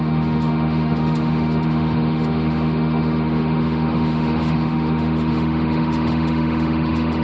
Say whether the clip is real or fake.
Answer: fake